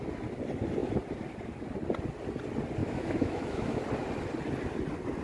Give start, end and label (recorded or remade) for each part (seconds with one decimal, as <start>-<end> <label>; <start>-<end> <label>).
0.0-2.8 recorded; 2.8-3.8 remade; 3.8-5.2 recorded

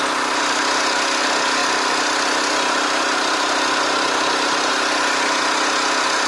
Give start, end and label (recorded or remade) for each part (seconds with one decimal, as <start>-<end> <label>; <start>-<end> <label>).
0.0-6.3 recorded

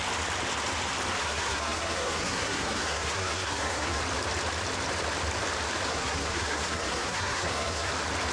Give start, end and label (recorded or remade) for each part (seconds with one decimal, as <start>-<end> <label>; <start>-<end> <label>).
0.0-1.2 recorded; 1.2-4.0 remade; 4.0-5.9 recorded; 5.9-7.9 remade; 7.9-8.3 recorded

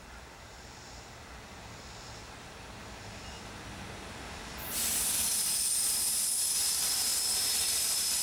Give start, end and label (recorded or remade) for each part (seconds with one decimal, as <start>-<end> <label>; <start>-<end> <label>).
0.0-8.2 remade

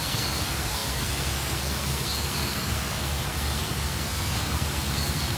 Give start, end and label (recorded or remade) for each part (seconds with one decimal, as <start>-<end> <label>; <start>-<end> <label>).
0.0-5.4 remade